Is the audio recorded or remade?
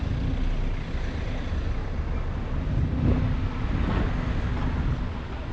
recorded